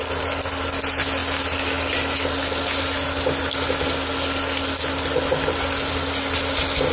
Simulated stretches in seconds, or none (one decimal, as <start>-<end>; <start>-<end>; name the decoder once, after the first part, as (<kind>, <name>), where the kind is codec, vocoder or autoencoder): none